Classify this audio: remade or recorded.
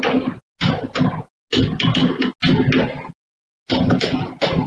recorded